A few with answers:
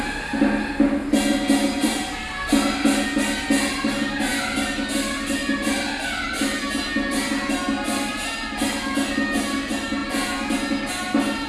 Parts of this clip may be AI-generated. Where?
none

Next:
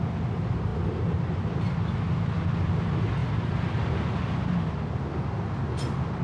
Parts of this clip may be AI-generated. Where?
none

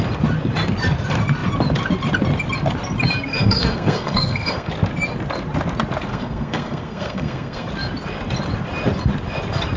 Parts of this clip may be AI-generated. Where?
3.3-4.7 (codec, SNAC); 6.1-7.7

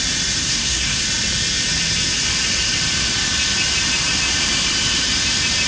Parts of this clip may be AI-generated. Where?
0.4-1.0 (codec, SNAC)

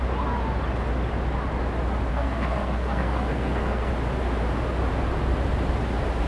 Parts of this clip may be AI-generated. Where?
2.1-3.9 (codec, SNAC)

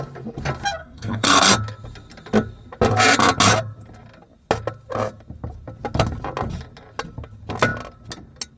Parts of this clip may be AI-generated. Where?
0.8-1.5 (codec, SNAC)